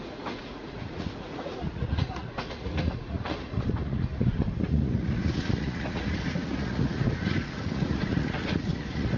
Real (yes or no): no